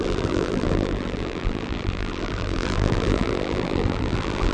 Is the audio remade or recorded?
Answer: remade